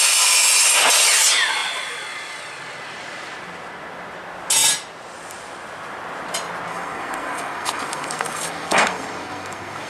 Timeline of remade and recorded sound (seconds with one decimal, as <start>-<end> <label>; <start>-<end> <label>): 0.0-6.7 recorded; 6.7-9.9 remade